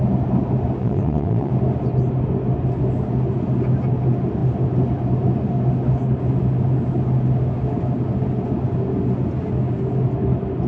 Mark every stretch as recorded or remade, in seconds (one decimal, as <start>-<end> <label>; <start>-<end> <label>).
0.0-0.8 recorded; 0.8-1.5 remade; 1.5-10.7 recorded